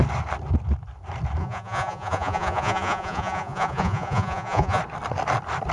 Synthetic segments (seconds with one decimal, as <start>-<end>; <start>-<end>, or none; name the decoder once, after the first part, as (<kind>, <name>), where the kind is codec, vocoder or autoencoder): 1.4-4.8 (vocoder, Vocos)